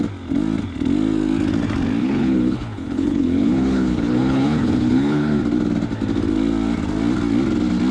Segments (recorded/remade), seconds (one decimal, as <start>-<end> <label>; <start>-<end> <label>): 0.0-2.0 recorded; 2.0-5.4 remade; 5.4-7.9 recorded